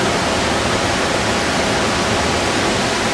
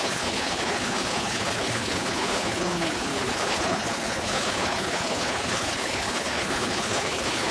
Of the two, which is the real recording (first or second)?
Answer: first